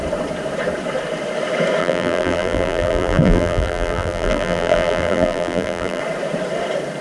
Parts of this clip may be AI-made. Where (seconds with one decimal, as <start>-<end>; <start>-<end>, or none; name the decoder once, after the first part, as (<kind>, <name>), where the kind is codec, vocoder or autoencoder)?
1.8-6.0 (vocoder, BigVGAN v2)